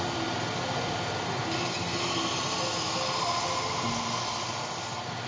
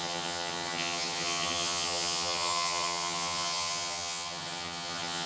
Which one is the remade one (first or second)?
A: second